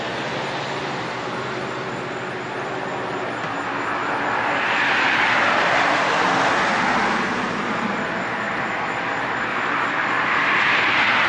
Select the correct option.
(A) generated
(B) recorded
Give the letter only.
B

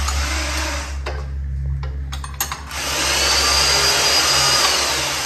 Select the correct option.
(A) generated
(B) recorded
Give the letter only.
B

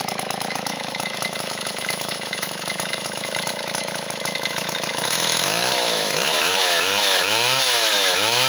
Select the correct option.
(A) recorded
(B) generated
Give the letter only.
B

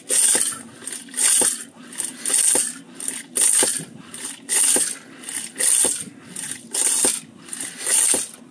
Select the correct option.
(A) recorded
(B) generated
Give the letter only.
A